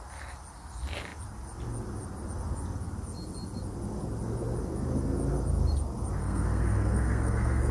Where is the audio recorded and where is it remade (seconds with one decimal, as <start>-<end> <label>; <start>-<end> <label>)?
0.0-6.2 recorded; 6.2-7.7 remade